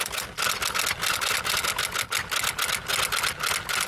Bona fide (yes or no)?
yes